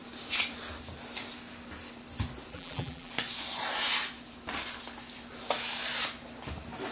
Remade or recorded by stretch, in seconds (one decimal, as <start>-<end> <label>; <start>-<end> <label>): 0.0-2.5 recorded; 2.5-3.1 remade; 3.1-6.9 recorded